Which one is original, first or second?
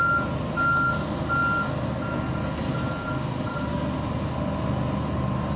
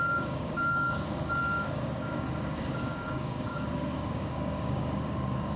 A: first